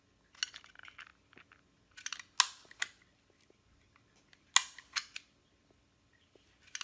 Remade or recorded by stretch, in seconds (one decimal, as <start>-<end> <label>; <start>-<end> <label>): 0.0-6.8 recorded